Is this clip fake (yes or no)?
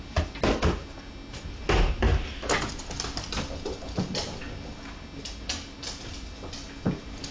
no